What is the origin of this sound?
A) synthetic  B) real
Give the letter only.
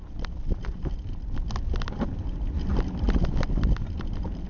B